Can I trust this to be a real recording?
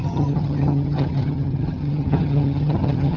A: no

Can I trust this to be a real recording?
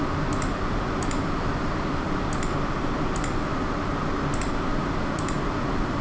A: yes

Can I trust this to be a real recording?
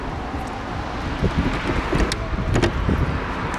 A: yes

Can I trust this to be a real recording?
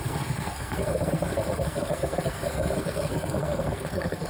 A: no